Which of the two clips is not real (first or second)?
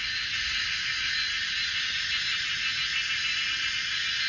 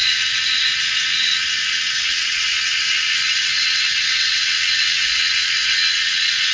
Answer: second